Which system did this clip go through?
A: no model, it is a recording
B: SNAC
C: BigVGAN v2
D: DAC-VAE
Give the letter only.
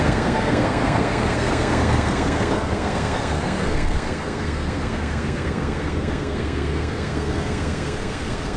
B